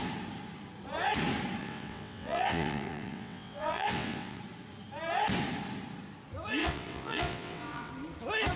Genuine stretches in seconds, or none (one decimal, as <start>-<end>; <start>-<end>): 0.0-1.6; 4.4-6.6; 7.9-8.6